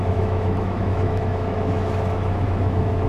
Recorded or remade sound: remade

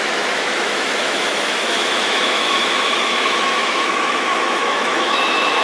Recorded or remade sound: remade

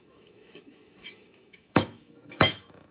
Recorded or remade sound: remade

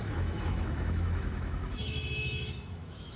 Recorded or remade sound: remade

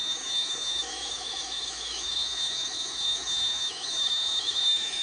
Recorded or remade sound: remade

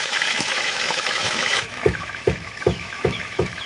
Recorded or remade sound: remade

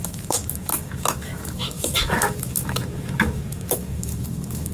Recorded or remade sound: remade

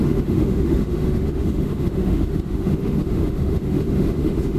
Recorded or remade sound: remade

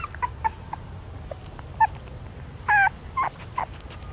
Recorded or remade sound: recorded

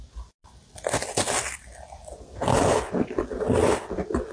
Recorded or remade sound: recorded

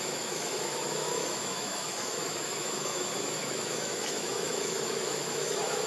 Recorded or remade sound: remade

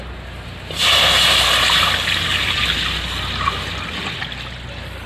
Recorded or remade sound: recorded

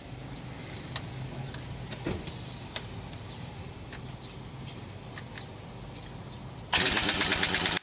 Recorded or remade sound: recorded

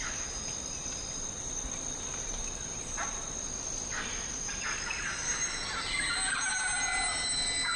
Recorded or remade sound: recorded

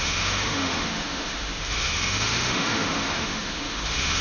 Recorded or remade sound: remade